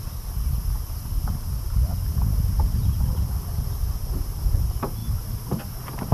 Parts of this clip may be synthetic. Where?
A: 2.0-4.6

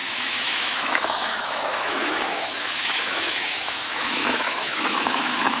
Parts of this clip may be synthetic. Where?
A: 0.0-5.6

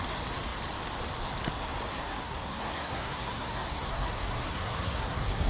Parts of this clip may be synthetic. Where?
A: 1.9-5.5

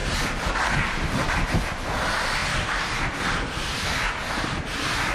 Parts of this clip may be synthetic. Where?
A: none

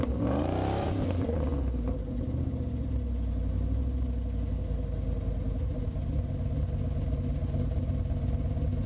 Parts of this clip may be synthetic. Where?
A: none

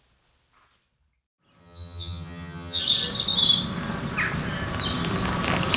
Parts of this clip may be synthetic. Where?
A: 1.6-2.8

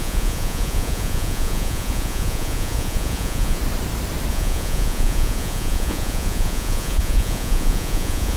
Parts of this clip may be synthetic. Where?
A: 0.0-3.6; 4.3-8.4

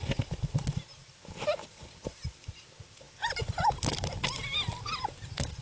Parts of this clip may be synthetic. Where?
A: none